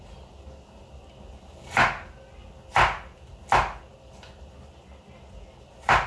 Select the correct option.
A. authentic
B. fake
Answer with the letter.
A